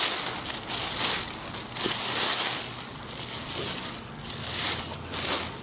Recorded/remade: recorded